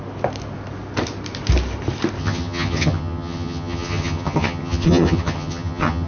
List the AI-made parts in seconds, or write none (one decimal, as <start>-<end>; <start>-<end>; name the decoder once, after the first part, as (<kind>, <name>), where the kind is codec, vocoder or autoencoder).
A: 2.2-6.1 (vocoder, HiFi-GAN)